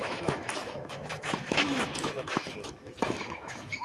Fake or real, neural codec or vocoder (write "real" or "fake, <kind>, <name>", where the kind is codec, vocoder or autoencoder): fake, autoencoder, DAC-VAE